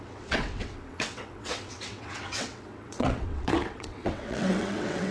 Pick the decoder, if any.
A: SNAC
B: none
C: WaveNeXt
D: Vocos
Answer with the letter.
C